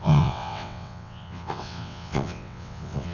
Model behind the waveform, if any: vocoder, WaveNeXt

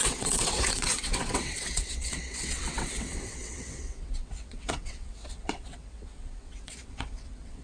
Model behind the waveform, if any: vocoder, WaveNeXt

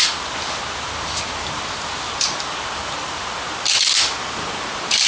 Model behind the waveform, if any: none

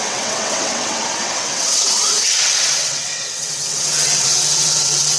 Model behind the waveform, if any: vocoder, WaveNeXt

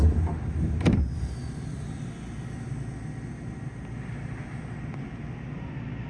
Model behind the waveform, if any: none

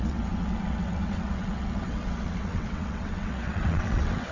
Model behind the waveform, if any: vocoder, WaveNeXt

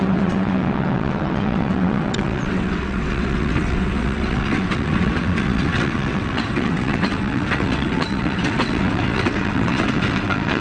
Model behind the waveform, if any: vocoder, WaveNeXt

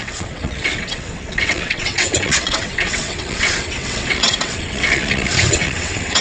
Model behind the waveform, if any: vocoder, WaveNeXt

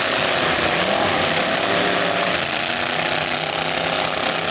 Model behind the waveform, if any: none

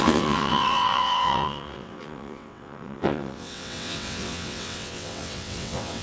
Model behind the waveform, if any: vocoder, WaveNeXt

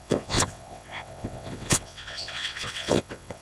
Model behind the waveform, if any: vocoder, WaveNeXt